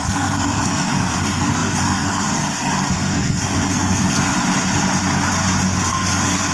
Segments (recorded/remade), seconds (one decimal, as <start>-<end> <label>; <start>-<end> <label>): 0.0-4.3 remade; 4.3-5.9 recorded; 5.9-6.5 remade